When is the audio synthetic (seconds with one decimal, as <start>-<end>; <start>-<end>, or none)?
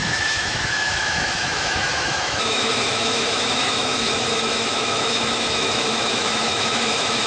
0.0-7.3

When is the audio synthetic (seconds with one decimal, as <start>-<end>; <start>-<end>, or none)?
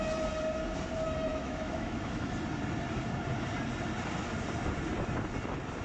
1.3-2.3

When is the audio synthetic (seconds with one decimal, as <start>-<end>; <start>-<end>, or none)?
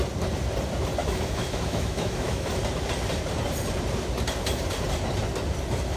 1.0-2.5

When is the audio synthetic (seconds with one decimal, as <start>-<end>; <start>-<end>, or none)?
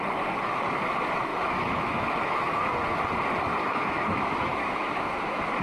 1.3-2.7; 3.6-5.6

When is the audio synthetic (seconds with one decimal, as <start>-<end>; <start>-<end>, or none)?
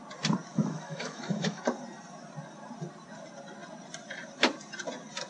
0.5-1.6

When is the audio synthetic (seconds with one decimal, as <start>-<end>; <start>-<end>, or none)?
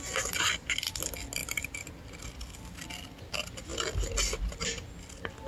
none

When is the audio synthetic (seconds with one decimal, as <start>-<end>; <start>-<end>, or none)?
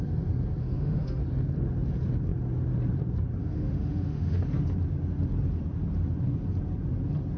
0.6-1.2; 3.4-4.4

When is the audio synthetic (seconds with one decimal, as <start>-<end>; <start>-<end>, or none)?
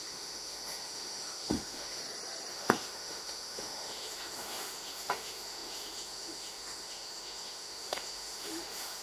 0.0-2.0; 2.5-9.0